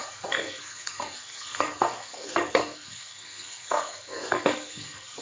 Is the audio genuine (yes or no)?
no